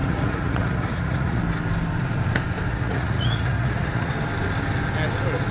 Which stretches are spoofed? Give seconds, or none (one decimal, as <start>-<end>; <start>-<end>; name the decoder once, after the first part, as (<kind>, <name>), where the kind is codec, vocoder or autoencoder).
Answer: 0.0-1.4 (vocoder, Vocos); 2.7-4.1